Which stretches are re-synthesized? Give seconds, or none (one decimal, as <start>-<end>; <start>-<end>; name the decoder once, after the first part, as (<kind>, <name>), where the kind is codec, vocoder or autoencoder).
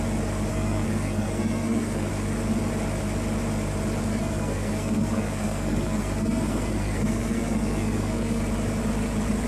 0.5-2.1 (codec, SNAC); 4.1-8.4